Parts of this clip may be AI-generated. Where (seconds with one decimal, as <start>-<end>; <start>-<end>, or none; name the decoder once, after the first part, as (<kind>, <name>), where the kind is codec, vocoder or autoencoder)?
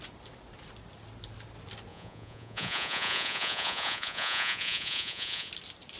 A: 1.9-5.5 (vocoder, Vocos)